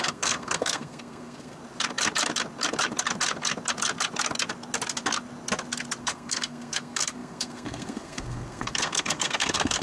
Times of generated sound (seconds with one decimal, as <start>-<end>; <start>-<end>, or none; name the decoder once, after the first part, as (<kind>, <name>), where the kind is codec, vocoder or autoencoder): 0.0-1.6 (codec, SNAC); 6.0-9.8